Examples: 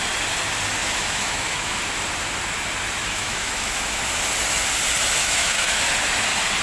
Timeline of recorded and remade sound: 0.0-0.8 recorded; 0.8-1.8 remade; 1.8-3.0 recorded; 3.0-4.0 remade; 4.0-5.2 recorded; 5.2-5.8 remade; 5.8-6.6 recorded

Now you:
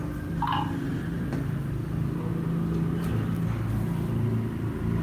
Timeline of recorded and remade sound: 0.0-0.9 recorded; 0.9-1.5 remade; 1.5-5.0 recorded

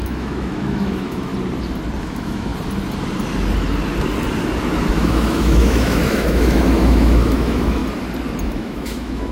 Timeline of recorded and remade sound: 0.0-1.3 remade; 1.3-2.0 recorded; 2.0-2.5 remade; 2.5-4.9 recorded; 4.9-7.8 remade; 7.8-8.4 recorded; 8.4-9.3 remade

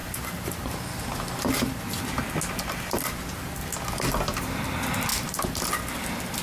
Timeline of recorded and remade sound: 0.0-6.4 recorded

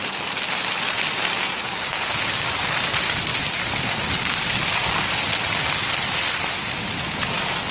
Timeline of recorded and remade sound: 0.0-1.6 recorded; 1.6-2.2 remade; 2.2-7.7 recorded

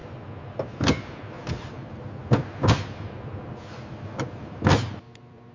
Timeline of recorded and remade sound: 0.0-1.6 recorded; 1.6-2.2 remade; 2.2-3.6 recorded; 3.6-5.5 remade

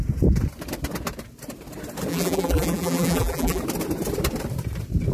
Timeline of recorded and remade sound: 0.0-2.1 recorded; 2.1-3.6 remade; 3.6-5.1 recorded

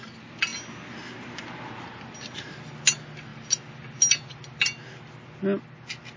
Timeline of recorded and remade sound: 0.0-6.2 recorded